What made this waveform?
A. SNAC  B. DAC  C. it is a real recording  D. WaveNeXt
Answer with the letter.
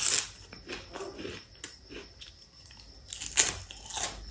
C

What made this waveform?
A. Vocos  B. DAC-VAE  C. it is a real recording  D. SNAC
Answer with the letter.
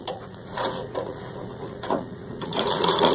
A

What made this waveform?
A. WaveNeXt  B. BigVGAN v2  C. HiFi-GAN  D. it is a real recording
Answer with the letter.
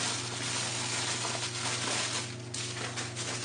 D